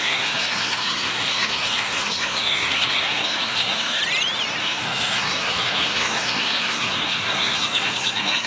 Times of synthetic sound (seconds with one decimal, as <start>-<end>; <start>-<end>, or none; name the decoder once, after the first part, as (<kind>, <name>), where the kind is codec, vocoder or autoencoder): 0.0-4.0 (codec, SNAC); 4.6-8.5